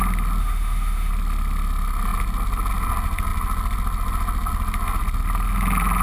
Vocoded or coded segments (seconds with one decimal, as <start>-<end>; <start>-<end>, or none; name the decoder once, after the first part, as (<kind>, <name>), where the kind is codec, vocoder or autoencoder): 0.4-1.1 (autoencoder, DAC-VAE)